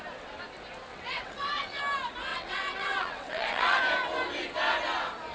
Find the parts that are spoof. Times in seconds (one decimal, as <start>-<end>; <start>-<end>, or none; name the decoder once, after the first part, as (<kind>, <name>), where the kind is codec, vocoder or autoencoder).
0.9-1.8 (vocoder, WaveNeXt); 2.3-3.8